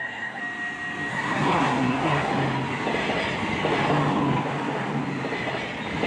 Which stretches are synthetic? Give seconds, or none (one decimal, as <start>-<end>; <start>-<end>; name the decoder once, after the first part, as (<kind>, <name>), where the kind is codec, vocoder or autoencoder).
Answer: 0.0-0.4 (codec, SNAC); 1.1-2.3